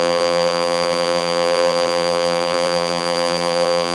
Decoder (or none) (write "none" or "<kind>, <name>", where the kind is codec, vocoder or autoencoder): vocoder, BigVGAN v2